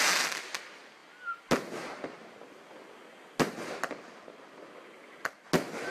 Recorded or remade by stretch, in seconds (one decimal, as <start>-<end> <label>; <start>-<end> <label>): 0.0-5.9 recorded